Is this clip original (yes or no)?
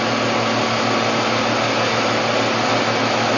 yes